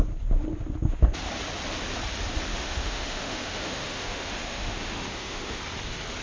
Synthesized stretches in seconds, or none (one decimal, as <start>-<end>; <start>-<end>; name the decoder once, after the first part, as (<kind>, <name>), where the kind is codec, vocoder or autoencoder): 2.5-5.6 (autoencoder, DAC-VAE)